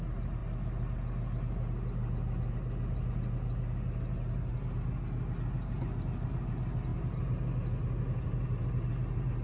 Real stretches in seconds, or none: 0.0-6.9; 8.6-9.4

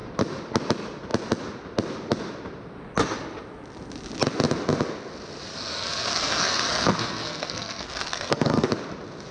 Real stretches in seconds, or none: 0.0-5.5; 8.7-9.3

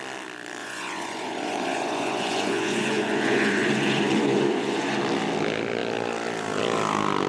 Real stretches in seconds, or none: 0.0-0.6; 5.0-7.3